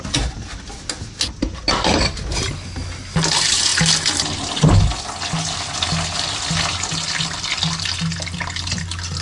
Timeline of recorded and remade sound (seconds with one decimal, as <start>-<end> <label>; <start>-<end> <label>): 0.0-9.2 recorded

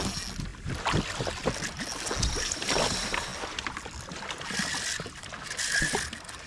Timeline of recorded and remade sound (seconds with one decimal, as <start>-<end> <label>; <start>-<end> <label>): 0.0-6.5 recorded

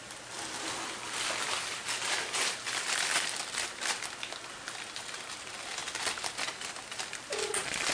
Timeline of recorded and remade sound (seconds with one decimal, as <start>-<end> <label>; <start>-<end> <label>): 0.0-7.9 recorded

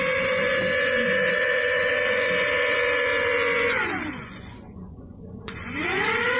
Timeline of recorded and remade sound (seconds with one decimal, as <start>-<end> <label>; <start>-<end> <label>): 0.0-6.4 remade

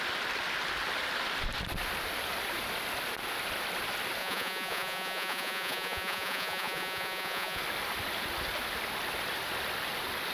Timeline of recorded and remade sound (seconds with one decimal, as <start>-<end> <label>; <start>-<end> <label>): 0.0-4.2 recorded; 4.2-7.6 remade; 7.6-10.3 recorded

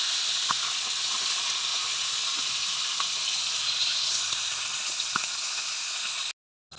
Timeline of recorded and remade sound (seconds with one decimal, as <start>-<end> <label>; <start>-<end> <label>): 0.0-1.7 recorded; 1.7-2.5 remade; 2.5-6.8 recorded

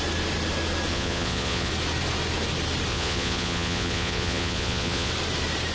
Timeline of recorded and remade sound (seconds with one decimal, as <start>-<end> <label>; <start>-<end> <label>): 0.0-0.9 recorded; 0.9-1.7 remade; 1.7-2.9 recorded; 2.9-5.1 remade; 5.1-5.7 recorded